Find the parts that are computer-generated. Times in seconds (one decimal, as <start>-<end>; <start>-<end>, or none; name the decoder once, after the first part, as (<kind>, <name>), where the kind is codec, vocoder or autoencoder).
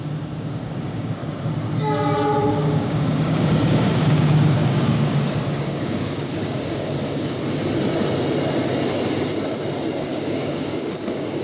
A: 0.0-1.2 (codec, DAC); 2.5-7.4; 10.0-11.4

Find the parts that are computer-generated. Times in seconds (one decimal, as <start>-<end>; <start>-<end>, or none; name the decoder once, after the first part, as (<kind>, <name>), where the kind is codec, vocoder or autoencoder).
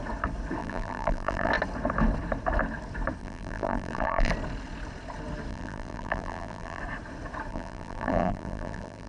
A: 0.6-1.5 (vocoder, BigVGAN v2); 3.2-4.3; 5.5-6.8; 7.5-9.1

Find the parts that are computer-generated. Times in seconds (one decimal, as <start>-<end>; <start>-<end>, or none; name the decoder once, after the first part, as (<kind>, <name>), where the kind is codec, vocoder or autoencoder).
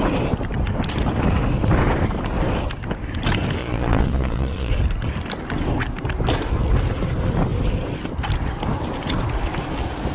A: 3.6-4.7 (vocoder, Vocos)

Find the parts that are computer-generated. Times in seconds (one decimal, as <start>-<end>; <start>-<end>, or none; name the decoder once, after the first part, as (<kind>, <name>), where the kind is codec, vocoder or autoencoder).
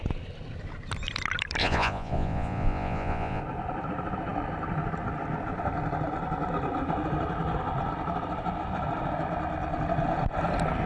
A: 1.6-3.4 (vocoder, Vocos)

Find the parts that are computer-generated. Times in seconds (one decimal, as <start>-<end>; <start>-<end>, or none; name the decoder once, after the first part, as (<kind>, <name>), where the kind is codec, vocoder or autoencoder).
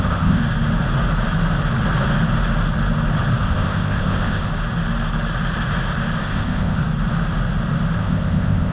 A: 0.0-0.4 (codec, ZipCodec); 3.4-4.5; 6.2-6.8; 8.0-8.7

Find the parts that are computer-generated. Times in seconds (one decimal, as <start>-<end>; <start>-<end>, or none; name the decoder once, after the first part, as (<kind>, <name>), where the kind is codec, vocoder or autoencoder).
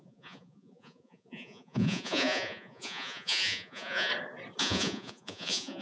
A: 0.0-4.1 (vocoder, Vocos); 4.6-5.8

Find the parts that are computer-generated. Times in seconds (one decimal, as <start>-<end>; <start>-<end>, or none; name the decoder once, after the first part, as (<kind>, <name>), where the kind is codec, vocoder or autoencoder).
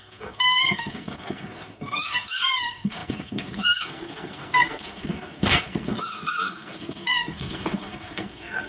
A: 0.0-8.7 (codec, SNAC)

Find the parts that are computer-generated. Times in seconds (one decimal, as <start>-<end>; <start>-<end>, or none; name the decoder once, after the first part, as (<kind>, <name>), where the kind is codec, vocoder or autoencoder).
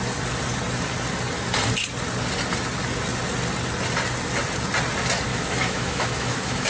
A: 5.3-6.7 (autoencoder, DAC-VAE)